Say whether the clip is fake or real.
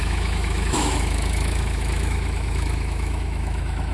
fake